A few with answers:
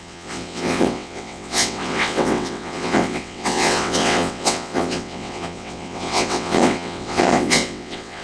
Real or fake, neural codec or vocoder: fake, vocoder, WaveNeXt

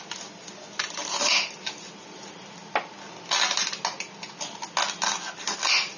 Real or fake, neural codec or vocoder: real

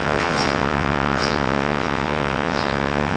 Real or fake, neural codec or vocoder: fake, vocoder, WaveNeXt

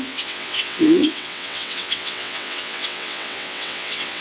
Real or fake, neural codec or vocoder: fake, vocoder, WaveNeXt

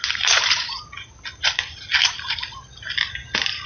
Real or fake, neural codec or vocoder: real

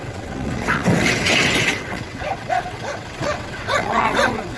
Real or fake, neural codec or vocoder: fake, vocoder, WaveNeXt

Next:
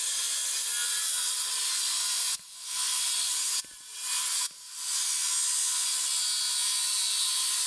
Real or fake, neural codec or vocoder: real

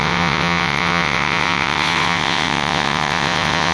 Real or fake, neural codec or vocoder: fake, vocoder, WaveNeXt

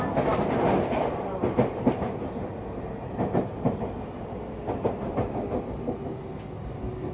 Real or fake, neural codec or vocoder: real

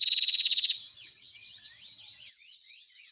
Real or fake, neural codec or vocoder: fake, vocoder, WaveNeXt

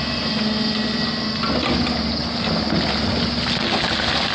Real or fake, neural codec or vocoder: real